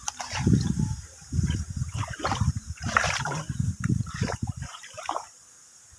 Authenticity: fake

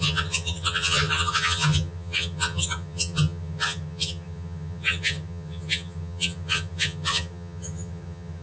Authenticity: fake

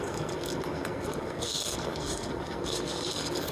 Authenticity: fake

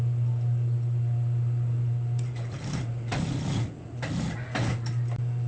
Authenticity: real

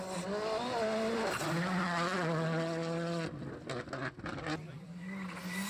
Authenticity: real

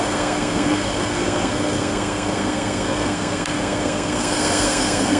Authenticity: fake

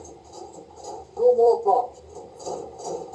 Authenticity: fake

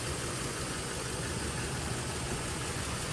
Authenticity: fake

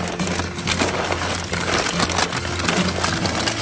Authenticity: real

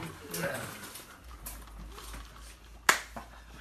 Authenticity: real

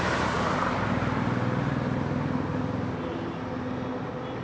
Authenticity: real